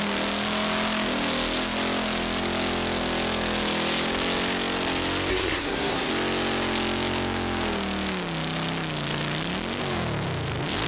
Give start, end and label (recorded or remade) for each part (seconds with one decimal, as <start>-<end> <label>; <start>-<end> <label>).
0.0-5.3 recorded; 5.3-6.1 remade; 6.1-10.9 recorded